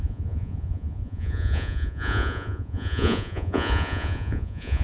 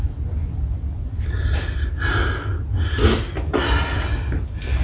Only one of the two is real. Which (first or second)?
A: second